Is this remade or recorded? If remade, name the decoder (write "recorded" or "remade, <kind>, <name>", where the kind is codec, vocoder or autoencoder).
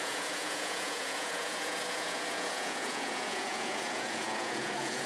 remade, vocoder, Vocos